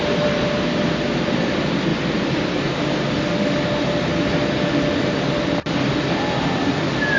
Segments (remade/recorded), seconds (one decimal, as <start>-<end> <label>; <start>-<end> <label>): 0.0-7.2 recorded